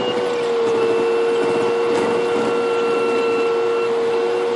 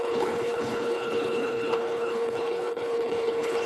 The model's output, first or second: second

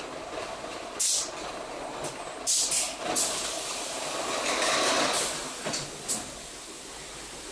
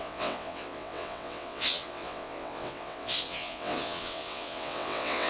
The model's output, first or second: second